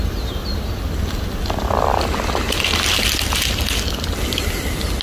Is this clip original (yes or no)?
yes